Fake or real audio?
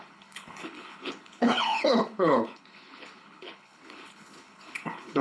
fake